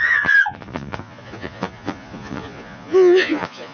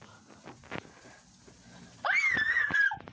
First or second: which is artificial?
first